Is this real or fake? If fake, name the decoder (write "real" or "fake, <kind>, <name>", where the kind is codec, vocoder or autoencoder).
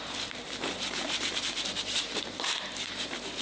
fake, vocoder, BigVGAN v2